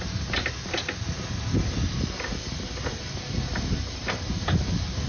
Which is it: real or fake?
real